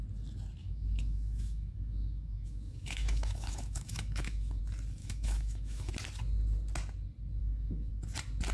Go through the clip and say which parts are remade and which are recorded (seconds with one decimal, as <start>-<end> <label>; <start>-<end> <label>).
0.0-0.6 recorded; 0.6-4.6 remade; 4.6-5.0 recorded; 5.0-5.9 remade; 5.9-7.4 recorded; 7.4-7.9 remade; 7.9-8.5 recorded